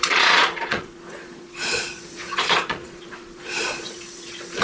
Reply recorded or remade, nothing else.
remade